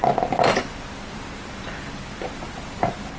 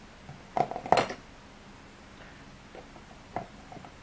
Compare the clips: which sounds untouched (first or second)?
second